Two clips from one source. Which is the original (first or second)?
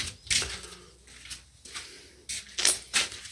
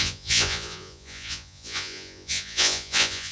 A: first